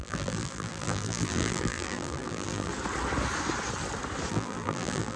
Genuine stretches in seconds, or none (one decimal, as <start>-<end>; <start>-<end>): 2.7-4.3